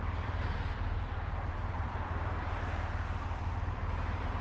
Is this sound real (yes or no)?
no